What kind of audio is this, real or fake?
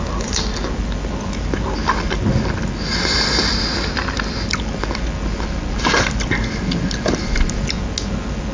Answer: real